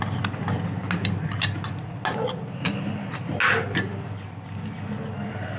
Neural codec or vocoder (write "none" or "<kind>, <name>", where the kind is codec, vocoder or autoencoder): none